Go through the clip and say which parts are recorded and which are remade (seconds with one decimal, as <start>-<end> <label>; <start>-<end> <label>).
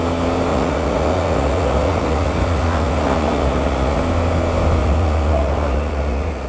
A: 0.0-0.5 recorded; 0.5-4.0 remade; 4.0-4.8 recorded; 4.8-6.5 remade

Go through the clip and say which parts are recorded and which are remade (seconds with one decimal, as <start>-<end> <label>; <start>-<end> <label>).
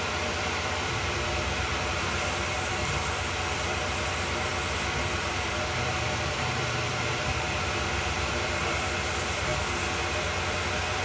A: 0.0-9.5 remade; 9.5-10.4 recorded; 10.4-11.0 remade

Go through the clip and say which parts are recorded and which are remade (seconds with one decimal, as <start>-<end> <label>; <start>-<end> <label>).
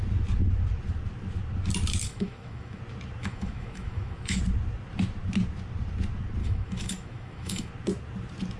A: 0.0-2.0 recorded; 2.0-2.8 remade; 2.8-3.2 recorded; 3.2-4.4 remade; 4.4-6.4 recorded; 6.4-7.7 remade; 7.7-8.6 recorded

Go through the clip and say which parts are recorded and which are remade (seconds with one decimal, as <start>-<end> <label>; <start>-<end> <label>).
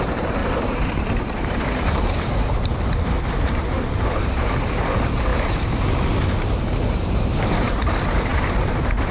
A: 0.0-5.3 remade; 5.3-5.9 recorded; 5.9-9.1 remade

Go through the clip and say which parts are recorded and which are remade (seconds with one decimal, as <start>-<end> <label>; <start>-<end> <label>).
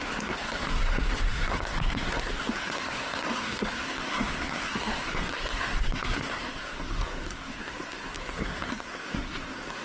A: 0.0-9.8 remade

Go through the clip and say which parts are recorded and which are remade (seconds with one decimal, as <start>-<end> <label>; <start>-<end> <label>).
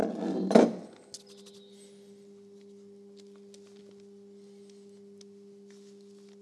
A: 0.0-6.4 recorded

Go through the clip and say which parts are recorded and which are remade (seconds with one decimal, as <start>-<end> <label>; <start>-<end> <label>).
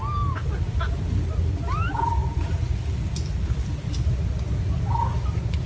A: 0.0-5.7 recorded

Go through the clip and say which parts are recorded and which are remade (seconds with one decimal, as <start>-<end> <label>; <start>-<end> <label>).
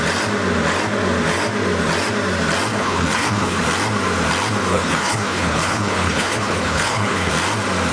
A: 0.0-2.7 recorded; 2.7-3.6 remade; 3.6-4.7 recorded; 4.7-7.3 remade; 7.3-7.9 recorded